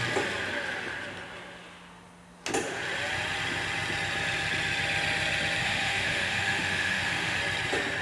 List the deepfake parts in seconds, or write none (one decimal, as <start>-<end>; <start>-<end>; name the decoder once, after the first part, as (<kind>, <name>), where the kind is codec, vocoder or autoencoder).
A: 5.6-7.4 (autoencoder, DAC-VAE)